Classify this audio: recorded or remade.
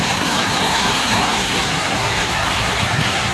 remade